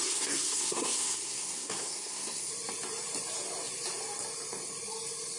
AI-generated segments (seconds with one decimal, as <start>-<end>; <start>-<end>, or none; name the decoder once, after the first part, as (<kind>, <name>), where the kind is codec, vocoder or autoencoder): 0.0-2.5 (codec, SNAC)